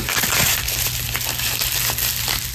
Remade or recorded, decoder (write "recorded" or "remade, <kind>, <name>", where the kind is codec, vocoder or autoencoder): recorded